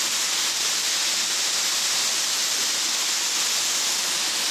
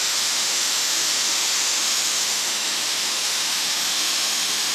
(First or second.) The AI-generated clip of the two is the second